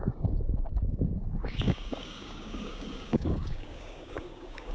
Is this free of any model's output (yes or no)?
no